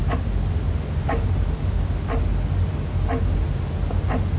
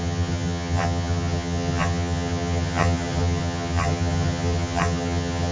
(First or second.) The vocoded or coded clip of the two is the second